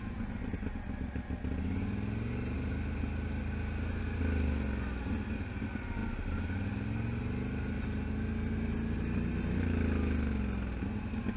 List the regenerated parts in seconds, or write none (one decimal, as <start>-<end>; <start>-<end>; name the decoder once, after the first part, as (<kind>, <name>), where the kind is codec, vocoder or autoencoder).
none